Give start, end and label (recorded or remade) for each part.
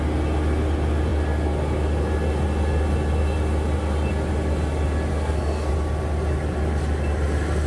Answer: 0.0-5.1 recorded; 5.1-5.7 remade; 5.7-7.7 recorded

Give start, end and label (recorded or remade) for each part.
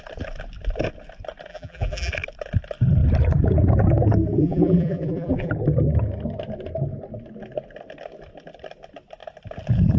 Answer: 0.0-1.5 recorded; 1.5-2.1 remade; 2.1-4.4 recorded; 4.4-5.5 remade; 5.5-10.0 recorded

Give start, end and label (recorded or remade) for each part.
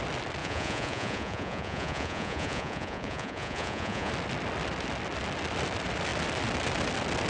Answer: 0.0-0.4 recorded; 0.4-4.1 remade; 4.1-7.3 recorded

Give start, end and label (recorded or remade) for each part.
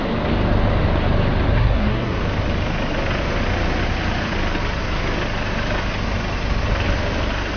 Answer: 0.0-1.5 recorded; 1.5-2.2 remade; 2.2-7.6 recorded